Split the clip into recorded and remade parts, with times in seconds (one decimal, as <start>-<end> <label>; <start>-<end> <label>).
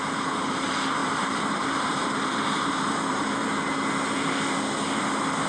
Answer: 0.0-3.4 remade; 3.4-5.5 recorded